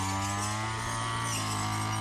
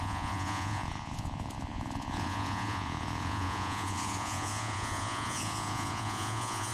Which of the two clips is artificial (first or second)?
second